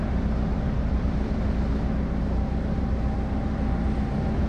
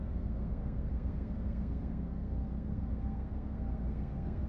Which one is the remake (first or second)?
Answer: second